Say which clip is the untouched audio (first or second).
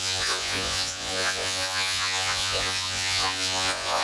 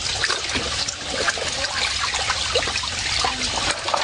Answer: second